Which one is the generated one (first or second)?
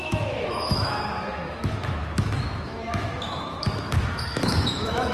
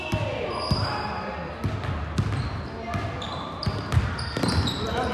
first